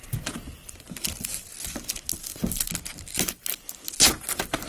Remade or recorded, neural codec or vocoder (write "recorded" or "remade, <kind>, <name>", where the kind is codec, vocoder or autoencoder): recorded